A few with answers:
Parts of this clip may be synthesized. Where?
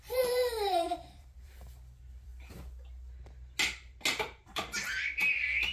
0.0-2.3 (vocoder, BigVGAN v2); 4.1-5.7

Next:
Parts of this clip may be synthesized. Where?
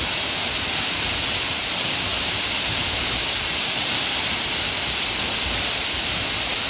none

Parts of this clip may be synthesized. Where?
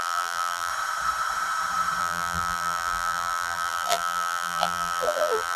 0.0-0.7 (vocoder, BigVGAN v2); 2.0-5.6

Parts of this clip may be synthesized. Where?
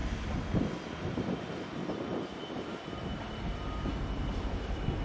none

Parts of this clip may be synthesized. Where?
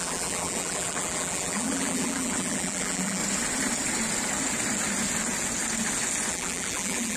0.0-3.2 (vocoder, BigVGAN v2); 6.3-7.2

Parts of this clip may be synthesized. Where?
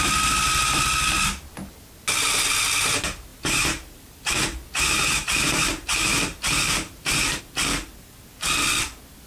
3.3-7.4 (vocoder, BigVGAN v2)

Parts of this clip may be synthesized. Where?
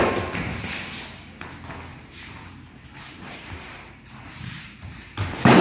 1.9-5.6 (vocoder, BigVGAN v2)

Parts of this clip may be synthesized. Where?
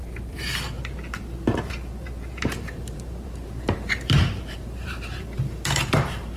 0.0-6.4 (vocoder, BigVGAN v2)